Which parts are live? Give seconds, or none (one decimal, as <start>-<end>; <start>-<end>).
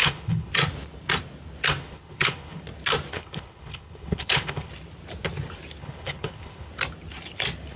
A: 0.5-1.8; 2.6-3.1; 4.7-5.8; 6.7-7.8